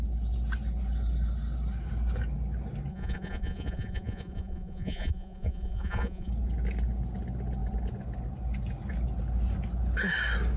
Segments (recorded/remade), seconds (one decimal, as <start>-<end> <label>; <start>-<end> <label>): 0.0-2.9 recorded; 2.9-6.3 remade; 6.3-10.6 recorded